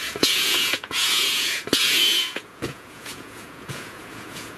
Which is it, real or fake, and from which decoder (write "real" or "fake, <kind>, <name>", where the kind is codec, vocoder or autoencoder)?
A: fake, vocoder, Vocos